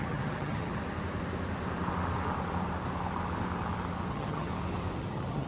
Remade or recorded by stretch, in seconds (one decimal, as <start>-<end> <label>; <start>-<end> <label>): 0.0-0.8 remade; 0.8-4.1 recorded; 4.1-4.5 remade; 4.5-5.0 recorded; 5.0-5.5 remade